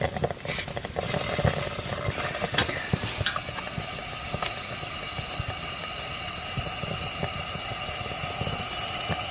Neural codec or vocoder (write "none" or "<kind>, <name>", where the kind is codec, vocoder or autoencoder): none